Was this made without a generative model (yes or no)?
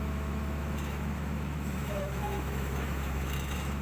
no